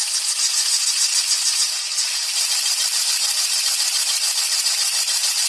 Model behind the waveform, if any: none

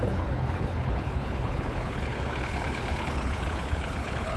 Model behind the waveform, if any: codec, HILCodec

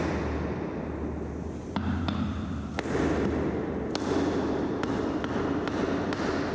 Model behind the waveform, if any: none